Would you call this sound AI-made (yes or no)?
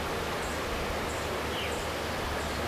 no